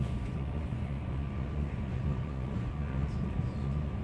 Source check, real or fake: fake